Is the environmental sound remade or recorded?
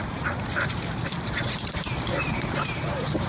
remade